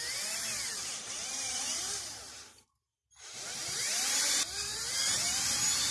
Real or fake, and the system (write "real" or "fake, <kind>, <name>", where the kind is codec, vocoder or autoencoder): fake, vocoder, BigVGAN v2